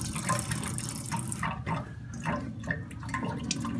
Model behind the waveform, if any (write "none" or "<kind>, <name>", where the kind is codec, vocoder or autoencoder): none